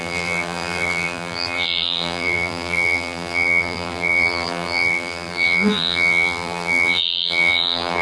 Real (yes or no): no